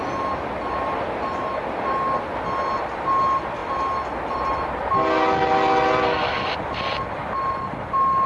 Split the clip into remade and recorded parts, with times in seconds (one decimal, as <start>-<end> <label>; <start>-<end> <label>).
0.0-8.3 recorded